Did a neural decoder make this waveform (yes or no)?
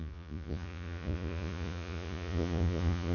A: yes